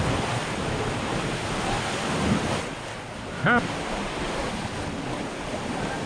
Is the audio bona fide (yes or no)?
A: yes